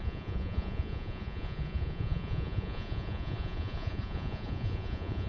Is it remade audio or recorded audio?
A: remade